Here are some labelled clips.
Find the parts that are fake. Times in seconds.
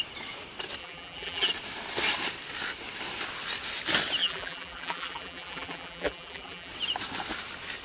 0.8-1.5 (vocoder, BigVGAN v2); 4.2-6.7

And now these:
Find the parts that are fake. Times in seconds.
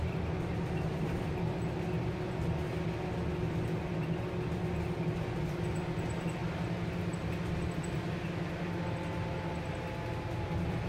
none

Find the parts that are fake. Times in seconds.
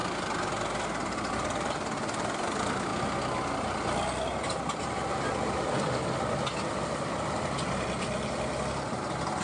1.3-2.9 (vocoder, BigVGAN v2); 8.0-9.4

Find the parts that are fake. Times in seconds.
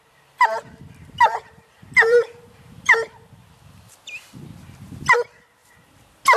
1.0-3.4 (vocoder, BigVGAN v2)